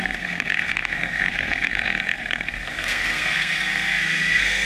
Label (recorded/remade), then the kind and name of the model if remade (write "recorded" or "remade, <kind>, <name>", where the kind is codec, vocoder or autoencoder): remade, codec, SNAC